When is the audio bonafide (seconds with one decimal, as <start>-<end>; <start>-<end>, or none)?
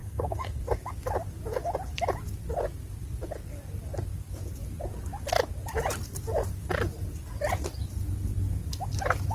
0.6-9.3